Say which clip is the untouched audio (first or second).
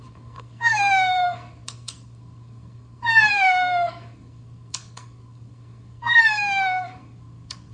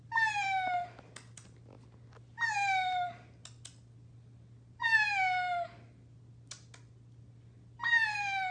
second